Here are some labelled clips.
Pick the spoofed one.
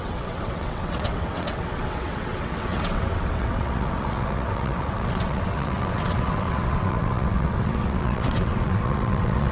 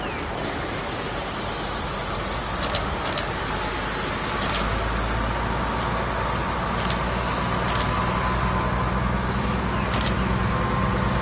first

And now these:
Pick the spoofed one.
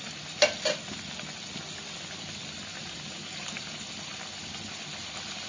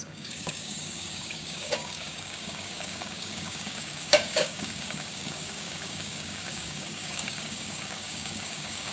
second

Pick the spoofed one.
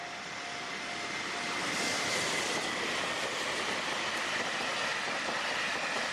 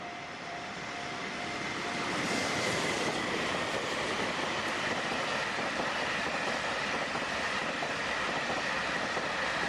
second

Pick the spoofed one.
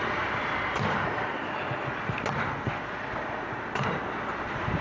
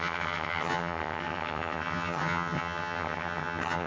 second